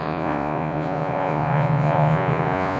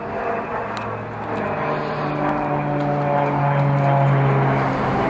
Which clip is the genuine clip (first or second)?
second